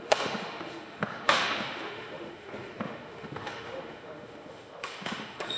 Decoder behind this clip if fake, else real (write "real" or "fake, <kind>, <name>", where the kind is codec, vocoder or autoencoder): fake, autoencoder, DAC-VAE